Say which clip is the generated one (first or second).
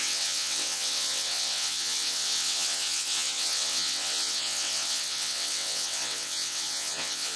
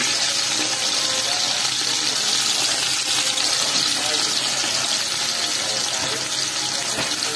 first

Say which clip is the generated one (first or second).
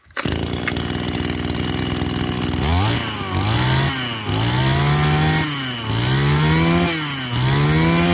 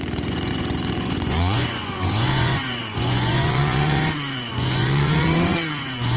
second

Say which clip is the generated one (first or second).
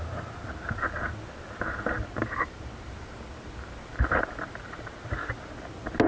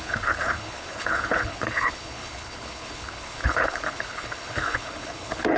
second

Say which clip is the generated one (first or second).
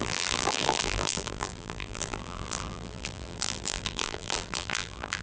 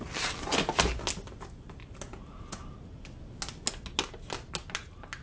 first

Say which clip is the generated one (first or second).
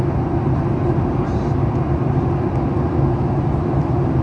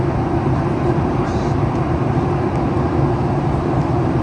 second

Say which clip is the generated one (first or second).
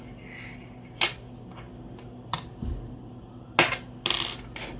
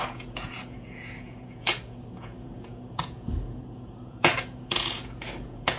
second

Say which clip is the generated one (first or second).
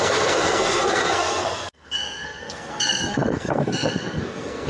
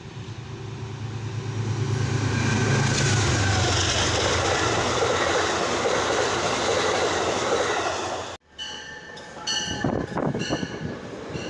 first